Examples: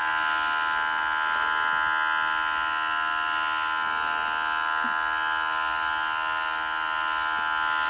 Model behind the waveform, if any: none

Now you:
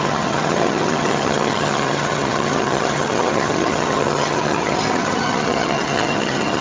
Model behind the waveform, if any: vocoder, HiFi-GAN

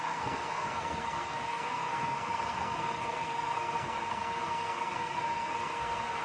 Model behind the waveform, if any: codec, SNAC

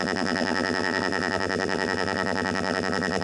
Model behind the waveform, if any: vocoder, BigVGAN v2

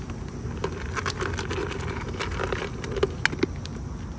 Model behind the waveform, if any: none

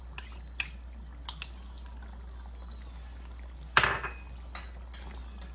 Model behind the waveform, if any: none